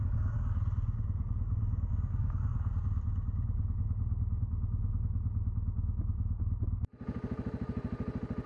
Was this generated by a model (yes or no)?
no